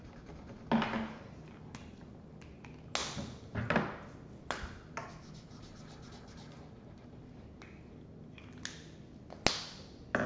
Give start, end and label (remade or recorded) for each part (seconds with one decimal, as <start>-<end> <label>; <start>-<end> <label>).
0.0-5.0 recorded; 5.0-5.5 remade; 5.5-10.3 recorded